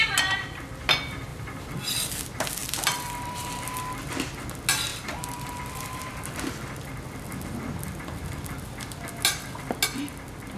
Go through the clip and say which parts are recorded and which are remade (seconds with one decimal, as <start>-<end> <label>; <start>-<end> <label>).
0.0-1.3 recorded; 1.3-2.2 remade; 2.2-2.6 recorded; 2.6-3.5 remade; 3.5-4.9 recorded; 4.9-6.1 remade; 6.1-10.6 recorded